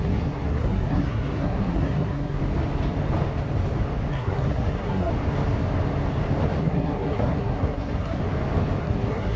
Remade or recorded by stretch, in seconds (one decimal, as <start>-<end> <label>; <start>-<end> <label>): 0.0-2.4 remade; 2.4-4.1 recorded; 4.1-5.1 remade; 5.1-6.6 recorded; 6.6-8.2 remade; 8.2-8.8 recorded; 8.8-9.4 remade